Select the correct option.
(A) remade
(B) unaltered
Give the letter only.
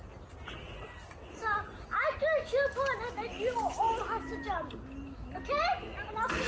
B